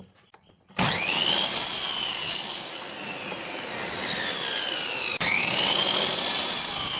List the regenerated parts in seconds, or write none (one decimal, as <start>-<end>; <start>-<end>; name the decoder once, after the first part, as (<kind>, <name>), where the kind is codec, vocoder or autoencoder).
none